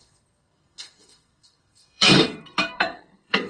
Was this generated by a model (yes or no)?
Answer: yes